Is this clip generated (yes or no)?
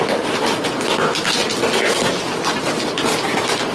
no